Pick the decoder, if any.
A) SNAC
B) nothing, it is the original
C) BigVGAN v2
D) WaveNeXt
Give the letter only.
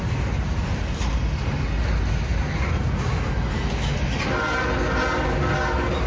B